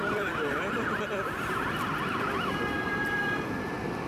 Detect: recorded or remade remade